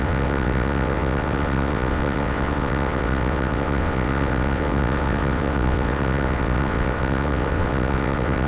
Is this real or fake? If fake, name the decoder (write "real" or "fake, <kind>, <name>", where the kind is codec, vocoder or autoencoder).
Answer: fake, vocoder, WaveNeXt